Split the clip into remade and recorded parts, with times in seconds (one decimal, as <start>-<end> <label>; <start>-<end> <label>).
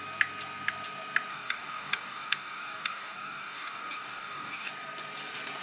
0.0-1.3 recorded; 1.3-4.7 remade; 4.7-5.6 recorded